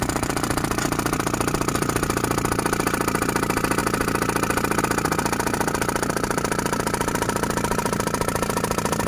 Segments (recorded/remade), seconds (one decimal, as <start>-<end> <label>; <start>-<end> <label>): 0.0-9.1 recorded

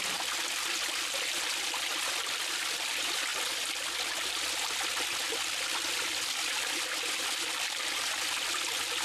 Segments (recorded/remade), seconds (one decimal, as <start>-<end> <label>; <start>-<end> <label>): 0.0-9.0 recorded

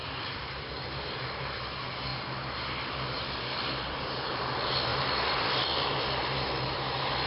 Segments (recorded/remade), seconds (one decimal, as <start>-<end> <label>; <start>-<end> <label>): 0.0-0.7 remade; 0.7-4.9 recorded; 4.9-6.0 remade; 6.0-7.3 recorded

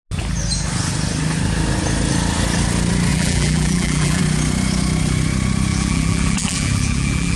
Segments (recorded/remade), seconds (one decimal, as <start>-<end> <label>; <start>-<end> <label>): 0.0-3.1 recorded; 3.1-4.2 remade; 4.2-5.7 recorded; 5.7-7.4 remade